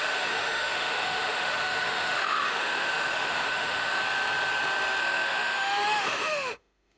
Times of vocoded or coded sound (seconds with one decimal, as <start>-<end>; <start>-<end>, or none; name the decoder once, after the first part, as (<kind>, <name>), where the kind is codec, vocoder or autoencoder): 0.0-4.0 (autoencoder, DAC-VAE); 5.0-7.0